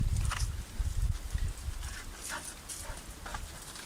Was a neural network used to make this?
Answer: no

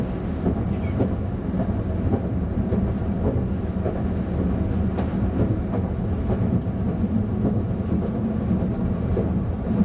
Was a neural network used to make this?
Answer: no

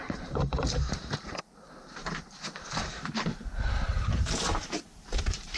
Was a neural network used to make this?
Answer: yes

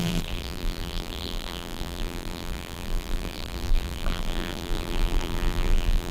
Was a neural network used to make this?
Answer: yes